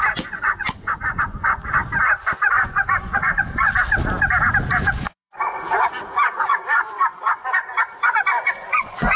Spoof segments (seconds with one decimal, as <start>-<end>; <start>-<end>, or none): 0.0-1.8; 2.5-3.7; 4.7-7.7; 8.3-9.2